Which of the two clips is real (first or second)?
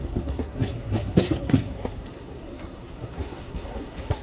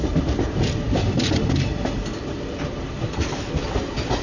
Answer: second